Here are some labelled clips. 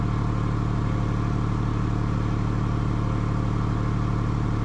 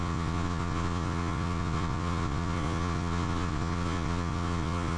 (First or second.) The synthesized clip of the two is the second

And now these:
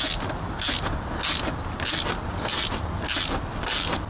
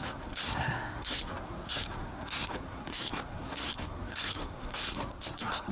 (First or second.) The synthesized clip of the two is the second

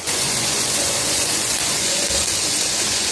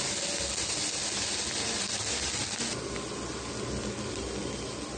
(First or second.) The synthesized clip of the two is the first